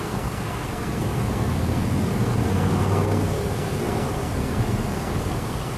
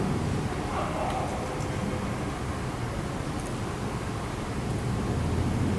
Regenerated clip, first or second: first